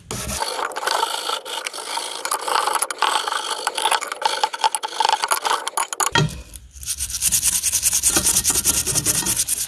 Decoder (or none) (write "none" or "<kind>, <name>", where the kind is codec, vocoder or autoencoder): none